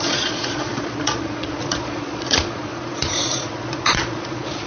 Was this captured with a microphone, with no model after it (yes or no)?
no